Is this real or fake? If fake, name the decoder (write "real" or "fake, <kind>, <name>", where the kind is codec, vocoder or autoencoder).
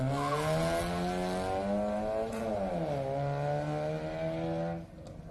real